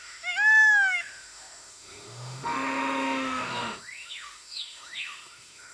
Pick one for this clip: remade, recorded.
remade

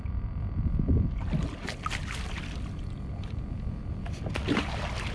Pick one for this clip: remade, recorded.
recorded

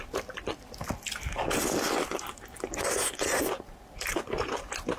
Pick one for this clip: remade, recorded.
recorded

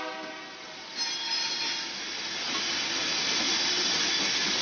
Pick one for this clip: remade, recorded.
recorded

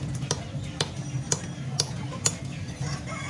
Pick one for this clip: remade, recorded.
recorded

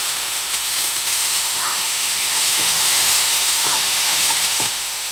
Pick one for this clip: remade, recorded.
remade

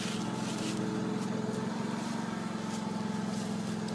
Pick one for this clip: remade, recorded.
recorded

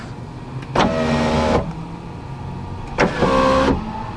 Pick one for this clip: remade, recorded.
recorded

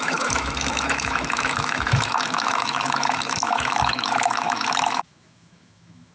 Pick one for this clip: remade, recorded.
remade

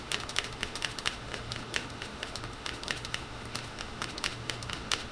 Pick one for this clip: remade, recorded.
remade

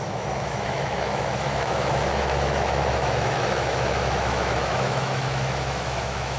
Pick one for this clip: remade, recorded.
remade